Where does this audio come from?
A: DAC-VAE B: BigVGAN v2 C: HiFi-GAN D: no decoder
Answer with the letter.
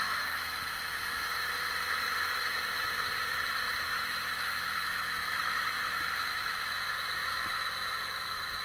A